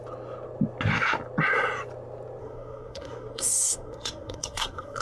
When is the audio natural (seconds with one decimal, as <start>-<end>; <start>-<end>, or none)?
0.0-2.4